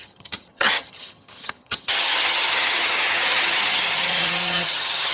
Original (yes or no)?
no